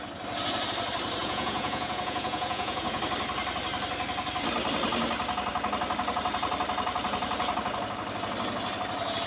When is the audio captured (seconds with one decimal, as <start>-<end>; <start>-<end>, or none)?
0.0-1.2; 3.0-9.3